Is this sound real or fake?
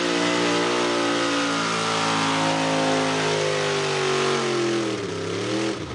real